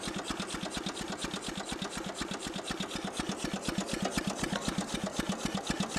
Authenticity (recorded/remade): recorded